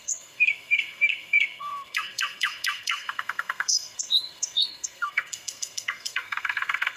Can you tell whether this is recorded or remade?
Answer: remade